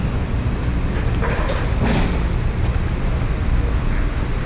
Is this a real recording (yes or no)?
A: yes